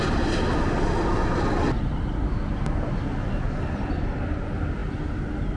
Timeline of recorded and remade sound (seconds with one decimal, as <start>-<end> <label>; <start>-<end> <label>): 0.0-5.6 recorded

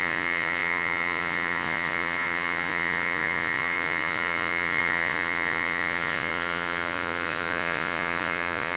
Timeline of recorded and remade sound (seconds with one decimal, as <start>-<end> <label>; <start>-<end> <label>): 0.0-8.8 remade

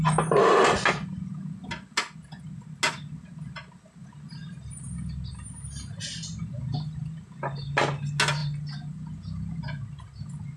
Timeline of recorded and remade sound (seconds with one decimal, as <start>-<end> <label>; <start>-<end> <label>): 0.0-10.6 recorded

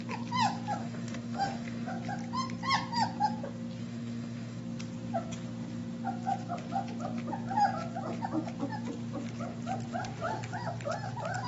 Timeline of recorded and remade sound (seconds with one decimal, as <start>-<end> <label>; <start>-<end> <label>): 0.0-0.8 recorded; 0.8-1.9 remade; 1.9-3.8 recorded; 3.8-4.6 remade; 4.6-11.5 recorded

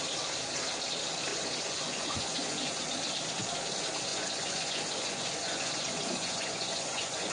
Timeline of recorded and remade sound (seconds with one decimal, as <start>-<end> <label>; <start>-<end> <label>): 0.0-1.3 recorded; 1.3-2.9 remade; 2.9-4.1 recorded; 4.1-7.3 remade

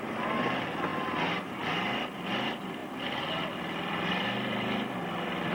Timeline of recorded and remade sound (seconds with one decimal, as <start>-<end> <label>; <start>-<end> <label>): 0.0-0.9 remade; 0.9-2.2 recorded; 2.2-2.8 remade; 2.8-3.6 recorded; 3.6-5.5 remade